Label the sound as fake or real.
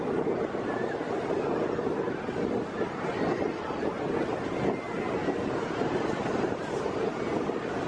real